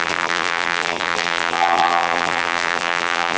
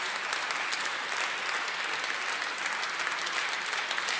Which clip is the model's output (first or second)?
first